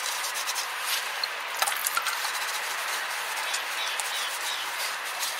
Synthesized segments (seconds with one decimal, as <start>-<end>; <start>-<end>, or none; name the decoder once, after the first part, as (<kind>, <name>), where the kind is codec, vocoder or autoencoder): 1.8-5.0 (vocoder, BigVGAN v2)

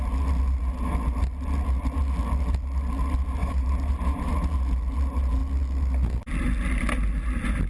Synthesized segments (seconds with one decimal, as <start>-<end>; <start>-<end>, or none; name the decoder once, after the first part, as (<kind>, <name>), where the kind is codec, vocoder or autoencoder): 3.4-4.3 (vocoder, BigVGAN v2)